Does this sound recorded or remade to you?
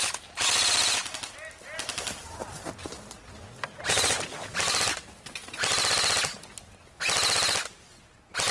recorded